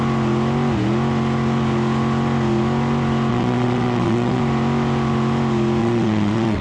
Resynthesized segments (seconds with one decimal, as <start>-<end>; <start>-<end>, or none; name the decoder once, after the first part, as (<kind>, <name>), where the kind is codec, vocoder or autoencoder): 3.3-4.4 (vocoder, WaveNeXt); 5.8-6.6